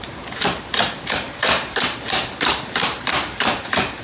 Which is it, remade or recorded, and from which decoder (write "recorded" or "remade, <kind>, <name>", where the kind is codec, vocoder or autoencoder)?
remade, vocoder, BigVGAN v2